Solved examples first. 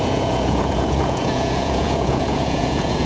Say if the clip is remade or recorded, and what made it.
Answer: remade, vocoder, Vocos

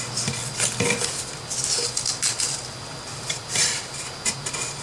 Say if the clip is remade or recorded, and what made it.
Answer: recorded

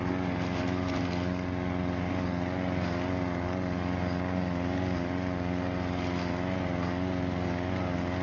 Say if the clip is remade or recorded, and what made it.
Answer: recorded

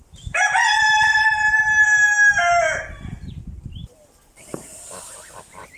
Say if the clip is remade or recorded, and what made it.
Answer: recorded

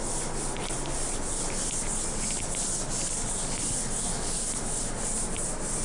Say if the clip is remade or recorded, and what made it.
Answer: recorded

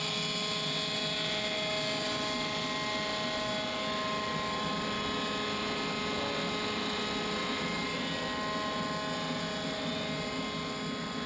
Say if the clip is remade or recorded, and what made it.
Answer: recorded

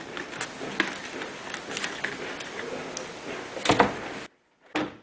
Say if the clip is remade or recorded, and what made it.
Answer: recorded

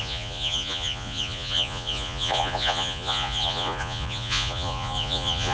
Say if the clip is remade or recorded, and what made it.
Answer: remade, vocoder, Vocos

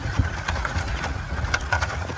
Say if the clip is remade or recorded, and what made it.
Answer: remade, vocoder, Vocos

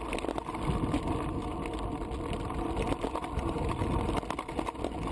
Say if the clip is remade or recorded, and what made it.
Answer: recorded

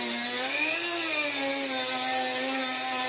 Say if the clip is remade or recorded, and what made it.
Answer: recorded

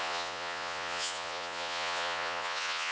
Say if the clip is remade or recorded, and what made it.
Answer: remade, vocoder, Vocos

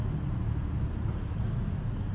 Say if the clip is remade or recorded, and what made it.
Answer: recorded